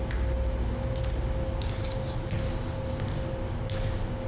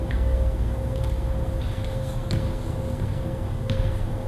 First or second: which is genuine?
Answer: first